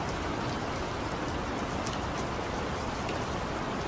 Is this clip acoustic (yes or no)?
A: yes